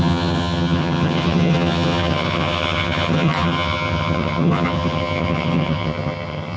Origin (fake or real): fake